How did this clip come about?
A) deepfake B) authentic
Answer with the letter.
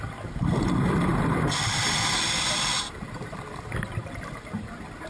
B